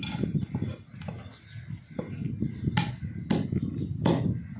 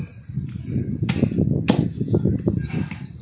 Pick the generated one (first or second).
second